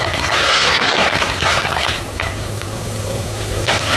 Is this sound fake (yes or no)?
yes